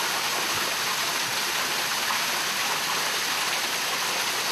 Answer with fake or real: real